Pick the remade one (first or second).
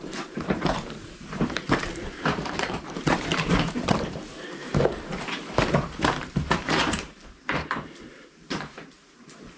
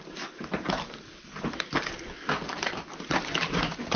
first